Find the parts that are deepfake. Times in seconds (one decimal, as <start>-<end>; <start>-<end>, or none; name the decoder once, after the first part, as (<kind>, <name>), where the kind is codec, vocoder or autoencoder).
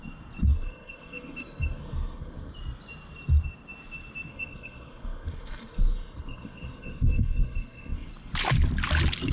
0.5-2.5 (codec, SNAC); 4.3-8.1